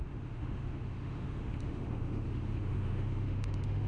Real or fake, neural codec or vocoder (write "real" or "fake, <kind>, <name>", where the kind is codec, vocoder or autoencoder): fake, autoencoder, DAC-VAE